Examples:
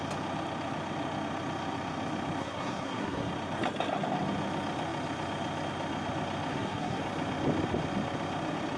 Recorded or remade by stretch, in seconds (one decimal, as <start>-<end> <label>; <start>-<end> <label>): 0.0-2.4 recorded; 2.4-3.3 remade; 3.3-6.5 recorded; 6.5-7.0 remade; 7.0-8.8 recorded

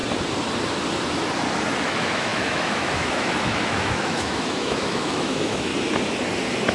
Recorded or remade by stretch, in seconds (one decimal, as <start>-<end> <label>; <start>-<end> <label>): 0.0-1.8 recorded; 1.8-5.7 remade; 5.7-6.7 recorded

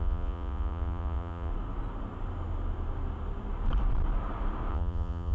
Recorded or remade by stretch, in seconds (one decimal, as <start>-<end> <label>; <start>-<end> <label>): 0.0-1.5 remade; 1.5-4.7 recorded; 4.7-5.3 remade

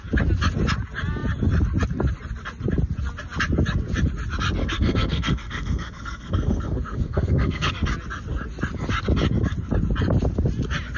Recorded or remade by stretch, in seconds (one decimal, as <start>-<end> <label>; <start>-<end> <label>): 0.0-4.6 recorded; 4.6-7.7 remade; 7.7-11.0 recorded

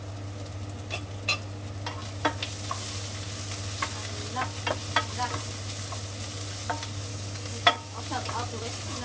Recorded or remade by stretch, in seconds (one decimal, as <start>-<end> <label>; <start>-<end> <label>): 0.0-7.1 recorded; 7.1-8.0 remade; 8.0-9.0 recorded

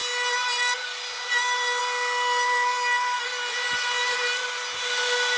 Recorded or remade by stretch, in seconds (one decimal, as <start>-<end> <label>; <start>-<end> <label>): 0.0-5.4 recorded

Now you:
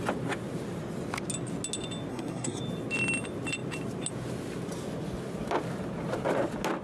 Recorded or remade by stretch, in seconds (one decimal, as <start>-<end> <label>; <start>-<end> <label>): 0.0-2.1 recorded; 2.1-2.6 remade; 2.6-6.8 recorded